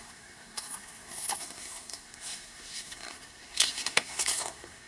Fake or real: fake